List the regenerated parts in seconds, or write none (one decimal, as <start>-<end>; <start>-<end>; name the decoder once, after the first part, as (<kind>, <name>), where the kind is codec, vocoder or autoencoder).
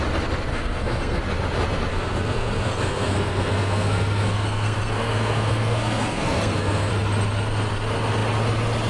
0.5-1.2 (codec, SNAC); 1.9-6.9